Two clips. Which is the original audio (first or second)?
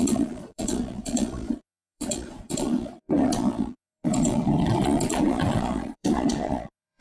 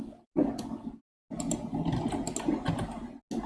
second